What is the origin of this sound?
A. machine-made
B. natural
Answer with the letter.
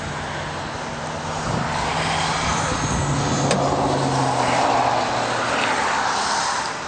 B